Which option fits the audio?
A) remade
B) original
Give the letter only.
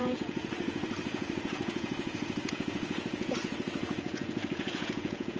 A